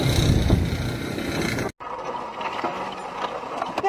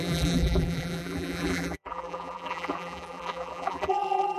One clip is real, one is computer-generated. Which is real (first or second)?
first